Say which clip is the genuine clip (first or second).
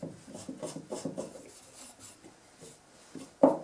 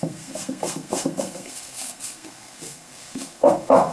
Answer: first